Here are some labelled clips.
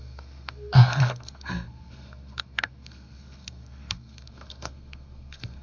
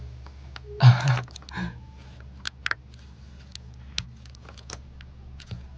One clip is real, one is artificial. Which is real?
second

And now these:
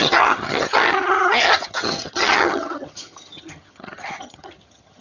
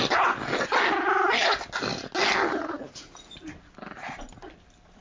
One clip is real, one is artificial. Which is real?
second